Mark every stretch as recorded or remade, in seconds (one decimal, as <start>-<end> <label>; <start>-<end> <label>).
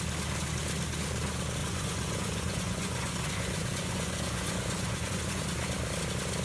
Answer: 0.0-1.6 recorded; 1.6-5.4 remade; 5.4-6.4 recorded